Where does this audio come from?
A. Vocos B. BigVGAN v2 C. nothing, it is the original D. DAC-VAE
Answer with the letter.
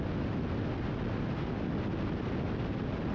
C